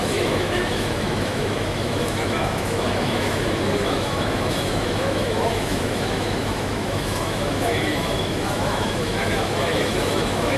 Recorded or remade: remade